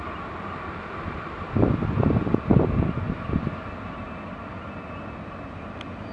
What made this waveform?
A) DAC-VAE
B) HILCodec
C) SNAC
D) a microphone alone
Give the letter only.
D